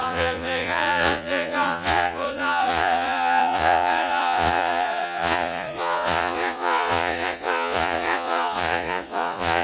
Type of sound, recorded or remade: remade